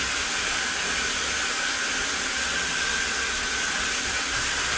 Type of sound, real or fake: real